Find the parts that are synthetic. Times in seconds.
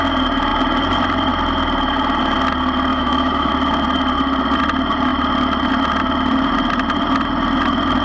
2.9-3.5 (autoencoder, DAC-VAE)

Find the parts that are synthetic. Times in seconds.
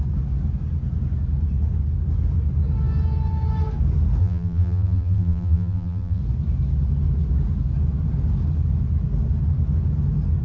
4.2-6.2 (vocoder, BigVGAN v2)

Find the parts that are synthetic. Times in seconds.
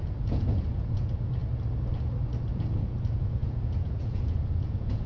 0.0-1.4 (vocoder, Vocos); 2.5-5.1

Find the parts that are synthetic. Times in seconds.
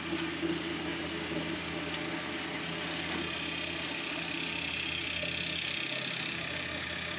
none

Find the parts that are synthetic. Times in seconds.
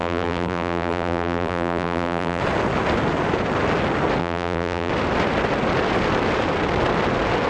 0.0-2.4 (vocoder, BigVGAN v2); 4.2-4.9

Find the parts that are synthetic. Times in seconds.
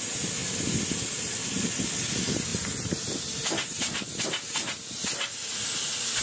none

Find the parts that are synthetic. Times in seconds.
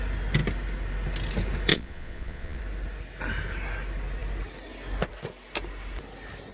1.7-2.6 (vocoder, Vocos)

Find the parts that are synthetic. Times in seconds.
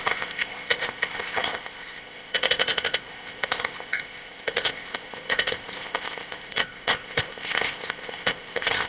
0.0-8.9 (codec, ZipCodec)